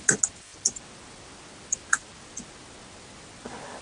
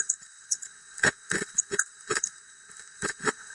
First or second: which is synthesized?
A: second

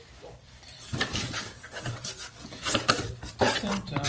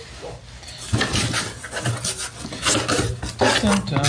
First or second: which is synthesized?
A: first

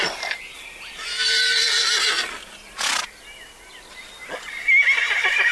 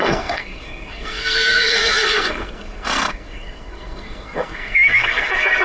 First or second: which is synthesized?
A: second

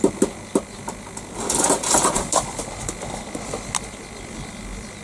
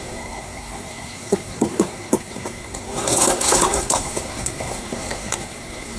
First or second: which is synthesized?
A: second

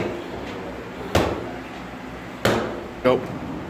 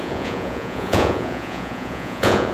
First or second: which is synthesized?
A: second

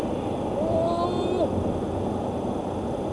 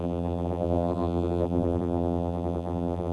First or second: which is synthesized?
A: second